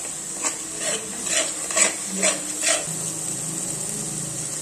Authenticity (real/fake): real